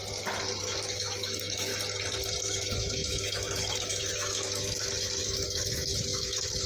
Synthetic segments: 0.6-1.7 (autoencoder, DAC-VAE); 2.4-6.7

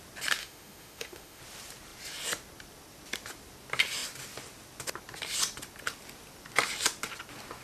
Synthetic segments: 0.4-1.4 (autoencoder, DAC-VAE)

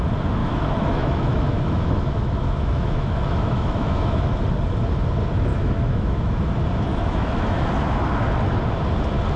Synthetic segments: 0.4-4.4 (autoencoder, DAC-VAE); 5.5-6.4; 6.9-7.7

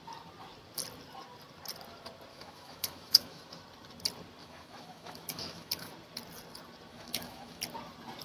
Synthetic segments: 2.3-3.4 (autoencoder, DAC-VAE); 4.4-5.9; 6.9-7.6